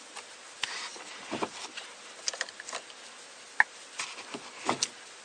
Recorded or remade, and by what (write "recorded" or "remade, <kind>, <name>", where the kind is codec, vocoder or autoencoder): recorded